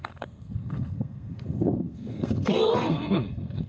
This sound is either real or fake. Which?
fake